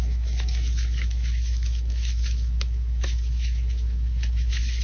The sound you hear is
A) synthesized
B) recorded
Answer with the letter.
A